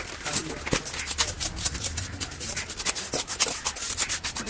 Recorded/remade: recorded